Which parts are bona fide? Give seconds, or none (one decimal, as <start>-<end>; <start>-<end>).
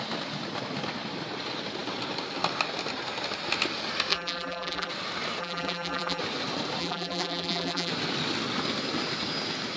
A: 0.0-4.1; 4.9-5.4; 6.2-6.8; 7.9-9.8